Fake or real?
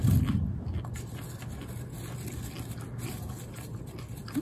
real